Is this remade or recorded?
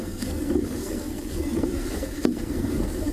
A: remade